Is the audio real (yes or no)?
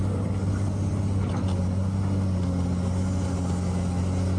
yes